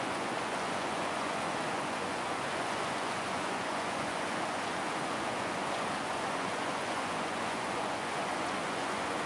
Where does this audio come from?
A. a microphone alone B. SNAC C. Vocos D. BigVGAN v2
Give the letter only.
C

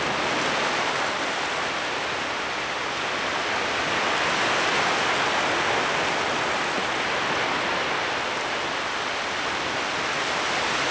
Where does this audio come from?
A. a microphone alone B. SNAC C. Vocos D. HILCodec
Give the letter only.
A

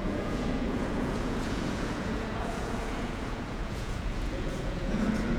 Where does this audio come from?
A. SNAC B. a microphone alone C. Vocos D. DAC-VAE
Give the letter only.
C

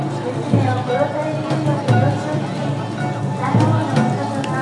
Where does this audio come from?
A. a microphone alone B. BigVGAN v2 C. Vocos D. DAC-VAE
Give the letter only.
A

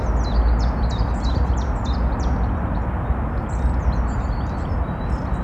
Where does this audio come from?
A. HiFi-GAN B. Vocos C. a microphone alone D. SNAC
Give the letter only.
C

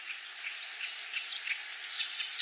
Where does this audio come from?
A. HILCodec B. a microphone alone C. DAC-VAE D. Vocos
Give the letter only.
B